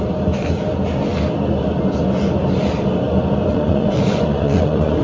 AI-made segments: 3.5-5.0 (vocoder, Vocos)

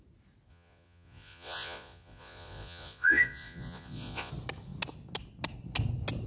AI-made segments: 0.5-4.3 (vocoder, Vocos)